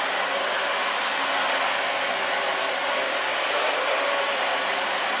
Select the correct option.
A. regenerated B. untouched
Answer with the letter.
B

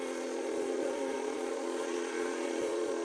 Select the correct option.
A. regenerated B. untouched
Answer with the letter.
A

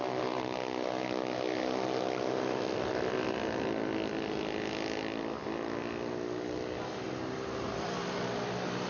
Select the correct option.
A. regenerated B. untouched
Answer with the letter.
B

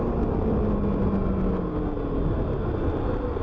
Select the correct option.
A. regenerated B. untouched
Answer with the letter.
B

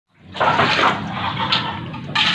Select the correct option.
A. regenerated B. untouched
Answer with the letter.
B